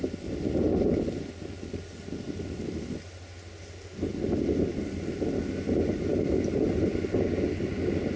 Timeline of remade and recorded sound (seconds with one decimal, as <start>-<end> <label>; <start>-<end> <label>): 0.0-8.2 recorded